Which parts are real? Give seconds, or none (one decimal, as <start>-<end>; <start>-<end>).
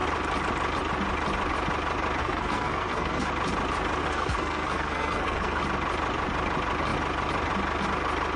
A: 0.0-2.2; 3.3-4.0; 5.6-8.4